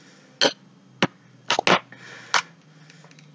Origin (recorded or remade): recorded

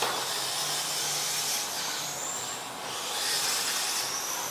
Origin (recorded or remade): recorded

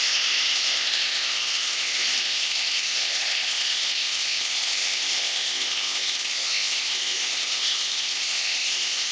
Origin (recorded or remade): remade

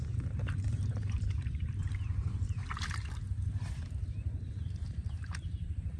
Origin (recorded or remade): remade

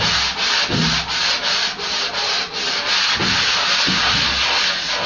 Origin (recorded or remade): recorded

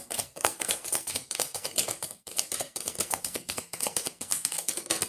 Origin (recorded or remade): remade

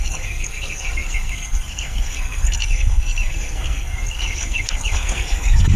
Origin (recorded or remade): remade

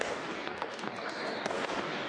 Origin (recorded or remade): remade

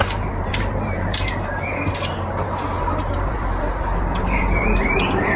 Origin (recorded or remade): remade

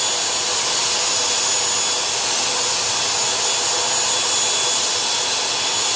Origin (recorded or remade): recorded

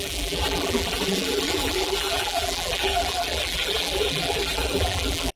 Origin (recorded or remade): remade